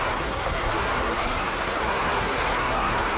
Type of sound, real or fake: fake